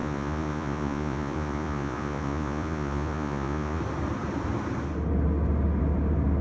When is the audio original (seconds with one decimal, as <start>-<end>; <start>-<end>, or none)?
3.8-6.4